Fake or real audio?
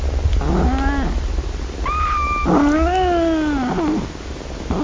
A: real